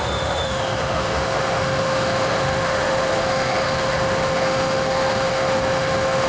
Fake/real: fake